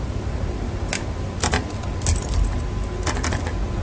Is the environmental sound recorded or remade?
recorded